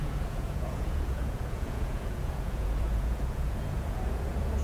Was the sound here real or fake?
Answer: fake